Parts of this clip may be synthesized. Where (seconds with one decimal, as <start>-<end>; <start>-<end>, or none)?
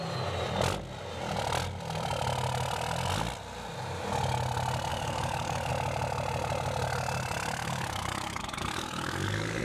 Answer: 4.9-5.7; 7.6-9.6